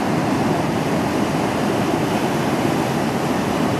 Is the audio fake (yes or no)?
no